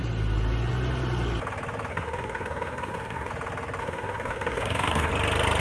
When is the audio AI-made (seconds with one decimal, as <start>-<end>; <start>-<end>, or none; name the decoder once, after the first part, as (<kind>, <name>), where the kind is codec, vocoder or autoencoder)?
1.9-3.3 (codec, SNAC); 3.8-5.1